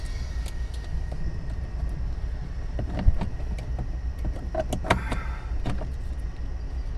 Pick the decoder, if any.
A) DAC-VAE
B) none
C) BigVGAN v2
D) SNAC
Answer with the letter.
B